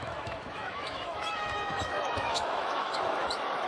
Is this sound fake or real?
fake